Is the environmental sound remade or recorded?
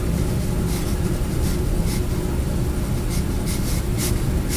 recorded